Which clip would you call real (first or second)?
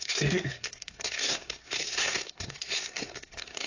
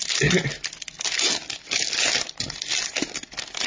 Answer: second